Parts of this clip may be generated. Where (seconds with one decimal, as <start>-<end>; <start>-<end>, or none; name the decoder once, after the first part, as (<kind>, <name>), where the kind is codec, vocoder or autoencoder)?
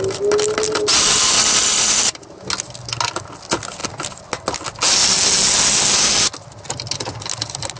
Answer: none